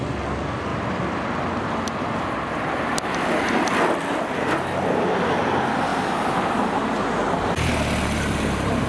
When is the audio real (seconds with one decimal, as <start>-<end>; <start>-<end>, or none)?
0.0-8.9